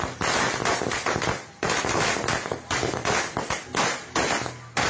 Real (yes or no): yes